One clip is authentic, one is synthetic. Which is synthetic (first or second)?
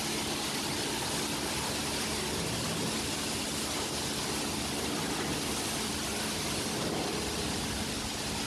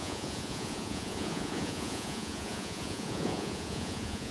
second